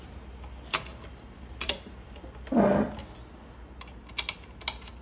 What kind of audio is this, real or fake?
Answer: real